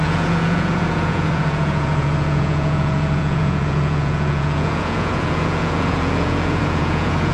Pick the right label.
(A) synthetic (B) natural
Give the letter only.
A